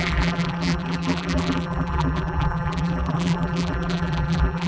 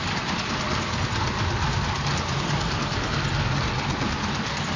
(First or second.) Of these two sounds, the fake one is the first